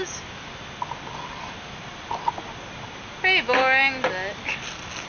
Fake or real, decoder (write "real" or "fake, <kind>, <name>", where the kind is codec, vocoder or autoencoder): real